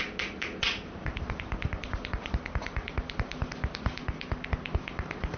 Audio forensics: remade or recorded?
recorded